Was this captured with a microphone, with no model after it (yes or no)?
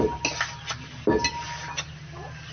yes